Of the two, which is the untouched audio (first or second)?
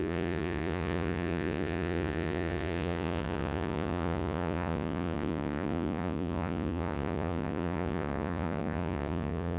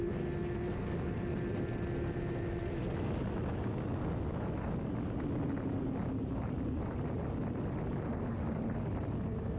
second